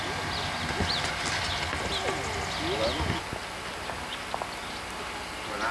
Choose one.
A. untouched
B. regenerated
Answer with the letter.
A